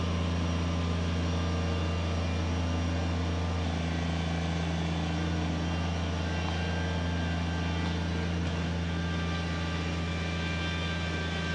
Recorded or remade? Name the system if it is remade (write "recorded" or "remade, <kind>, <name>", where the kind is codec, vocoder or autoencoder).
recorded